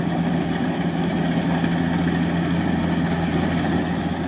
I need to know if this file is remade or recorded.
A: recorded